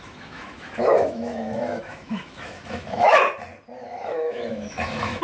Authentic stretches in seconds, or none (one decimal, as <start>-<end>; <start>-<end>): 3.2-3.8